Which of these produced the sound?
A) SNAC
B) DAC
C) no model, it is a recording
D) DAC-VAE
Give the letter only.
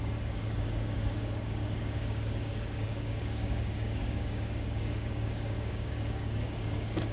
B